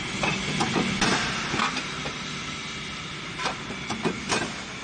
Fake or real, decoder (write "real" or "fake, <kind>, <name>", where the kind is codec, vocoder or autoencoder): real